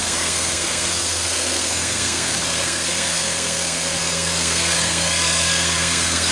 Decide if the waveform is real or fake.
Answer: fake